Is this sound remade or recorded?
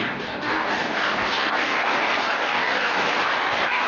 remade